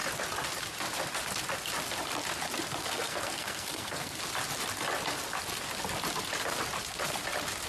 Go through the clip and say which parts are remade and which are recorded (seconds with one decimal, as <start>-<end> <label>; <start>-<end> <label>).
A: 0.0-2.8 recorded; 2.8-4.2 remade; 4.2-7.7 recorded